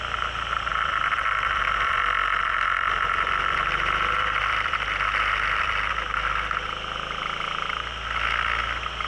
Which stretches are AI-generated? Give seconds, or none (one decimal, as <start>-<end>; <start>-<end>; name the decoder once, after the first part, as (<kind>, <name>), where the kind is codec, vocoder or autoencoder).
0.7-5.9 (vocoder, BigVGAN v2)